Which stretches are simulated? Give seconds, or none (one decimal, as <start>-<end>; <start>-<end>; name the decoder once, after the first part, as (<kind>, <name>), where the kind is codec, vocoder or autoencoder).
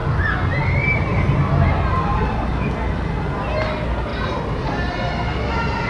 4.1-5.1 (vocoder, BigVGAN v2)